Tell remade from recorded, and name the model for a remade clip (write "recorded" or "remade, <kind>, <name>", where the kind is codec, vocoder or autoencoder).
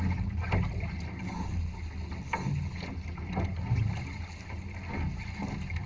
recorded